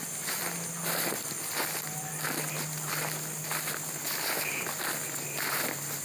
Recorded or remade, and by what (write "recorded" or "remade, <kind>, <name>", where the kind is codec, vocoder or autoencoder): recorded